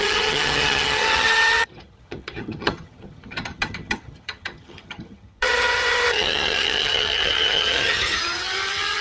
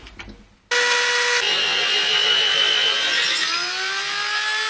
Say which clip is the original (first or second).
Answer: second